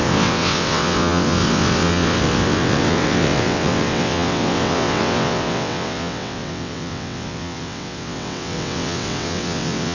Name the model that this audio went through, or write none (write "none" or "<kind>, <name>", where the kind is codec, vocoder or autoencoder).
vocoder, WaveNeXt